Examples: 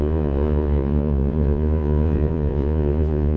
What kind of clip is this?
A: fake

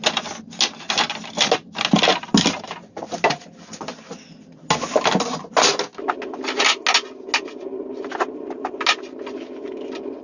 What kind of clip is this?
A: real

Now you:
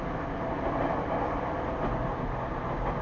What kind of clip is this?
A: real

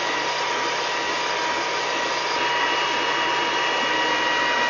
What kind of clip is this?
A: real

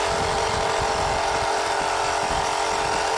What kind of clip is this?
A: real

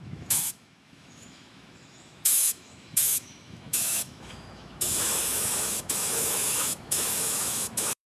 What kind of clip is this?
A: fake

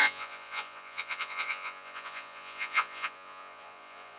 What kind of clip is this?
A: fake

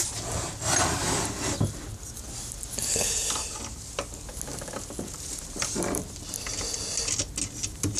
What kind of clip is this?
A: real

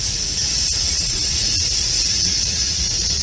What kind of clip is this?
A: fake